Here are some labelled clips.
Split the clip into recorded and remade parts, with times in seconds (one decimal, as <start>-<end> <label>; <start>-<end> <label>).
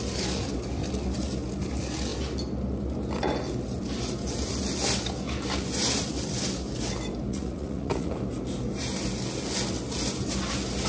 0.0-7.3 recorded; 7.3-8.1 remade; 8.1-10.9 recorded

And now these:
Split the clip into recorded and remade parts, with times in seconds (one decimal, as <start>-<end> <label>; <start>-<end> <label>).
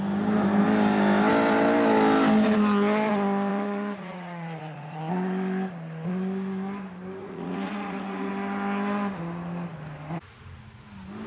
0.0-3.5 recorded; 3.5-5.0 remade; 5.0-7.2 recorded; 7.2-8.3 remade; 8.3-11.3 recorded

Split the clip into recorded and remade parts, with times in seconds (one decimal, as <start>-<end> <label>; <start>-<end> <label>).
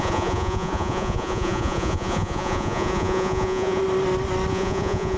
0.0-3.8 remade; 3.8-4.5 recorded; 4.5-5.2 remade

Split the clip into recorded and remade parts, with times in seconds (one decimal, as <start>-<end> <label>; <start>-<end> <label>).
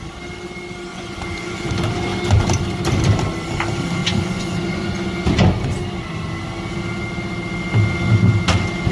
0.0-0.9 recorded; 0.9-1.7 remade; 1.7-4.0 recorded; 4.0-5.1 remade; 5.1-8.9 recorded